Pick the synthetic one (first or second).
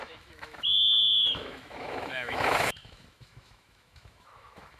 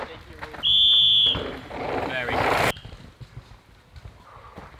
first